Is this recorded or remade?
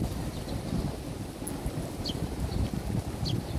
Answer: recorded